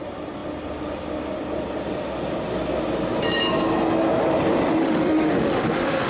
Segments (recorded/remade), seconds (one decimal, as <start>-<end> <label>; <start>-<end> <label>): 0.0-4.8 recorded; 4.8-6.1 remade